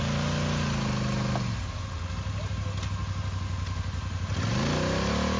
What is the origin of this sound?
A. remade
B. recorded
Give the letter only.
B